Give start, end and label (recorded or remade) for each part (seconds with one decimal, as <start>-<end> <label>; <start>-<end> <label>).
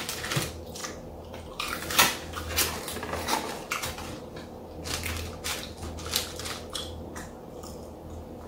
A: 0.0-8.5 recorded